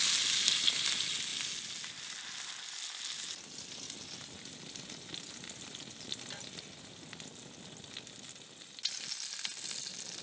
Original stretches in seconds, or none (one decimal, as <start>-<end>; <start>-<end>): 0.0-10.2